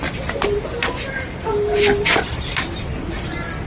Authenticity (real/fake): fake